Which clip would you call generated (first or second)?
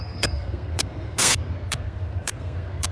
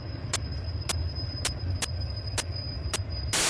first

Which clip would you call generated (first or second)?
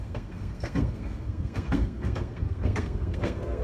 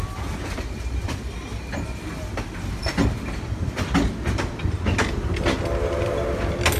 first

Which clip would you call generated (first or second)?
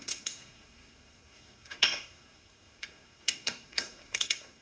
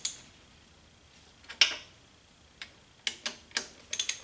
first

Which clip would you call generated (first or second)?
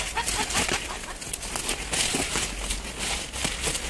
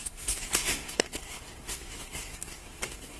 second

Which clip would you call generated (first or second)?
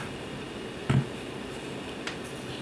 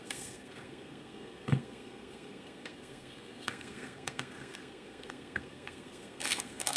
second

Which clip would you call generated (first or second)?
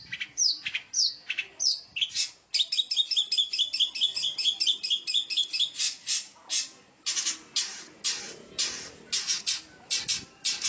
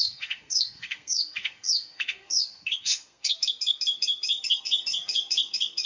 second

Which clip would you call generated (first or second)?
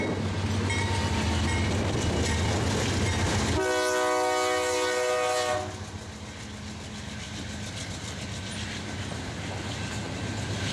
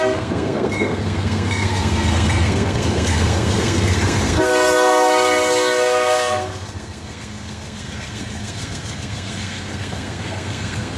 second